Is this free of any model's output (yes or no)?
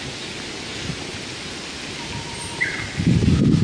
yes